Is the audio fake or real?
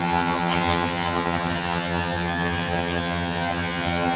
fake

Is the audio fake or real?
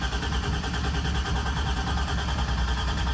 real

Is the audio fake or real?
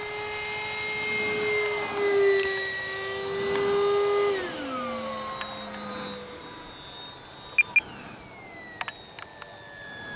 real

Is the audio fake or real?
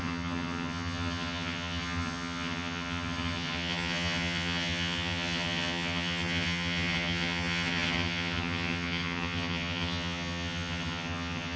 fake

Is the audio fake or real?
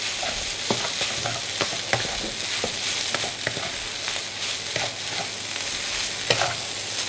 real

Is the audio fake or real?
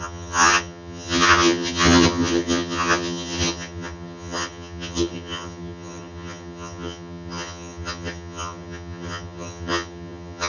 fake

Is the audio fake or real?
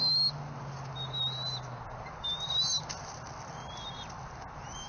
real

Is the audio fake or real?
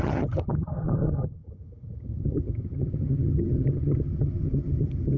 fake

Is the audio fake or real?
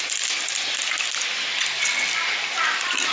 real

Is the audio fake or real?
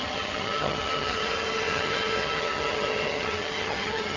fake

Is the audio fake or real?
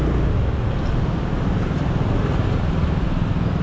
real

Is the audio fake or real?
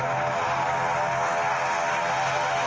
real